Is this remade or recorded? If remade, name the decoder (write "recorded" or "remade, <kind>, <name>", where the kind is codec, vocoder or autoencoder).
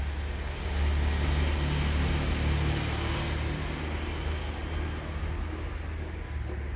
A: recorded